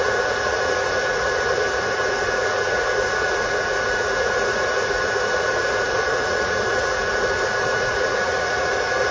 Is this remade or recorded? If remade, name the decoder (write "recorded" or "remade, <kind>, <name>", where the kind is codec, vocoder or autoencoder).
remade, vocoder, Vocos